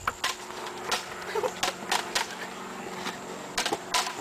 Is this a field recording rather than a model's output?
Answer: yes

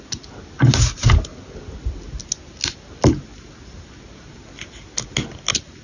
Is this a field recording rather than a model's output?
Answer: yes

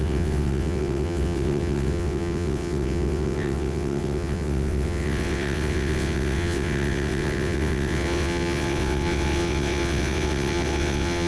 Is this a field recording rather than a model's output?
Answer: no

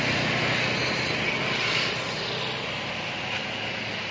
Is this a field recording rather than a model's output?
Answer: yes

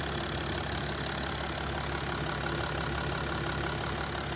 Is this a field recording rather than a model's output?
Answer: yes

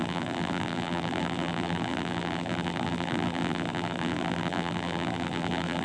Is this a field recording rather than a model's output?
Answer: no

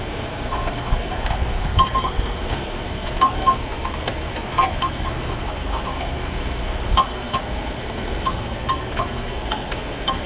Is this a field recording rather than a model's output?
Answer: no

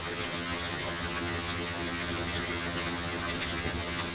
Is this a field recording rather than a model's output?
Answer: no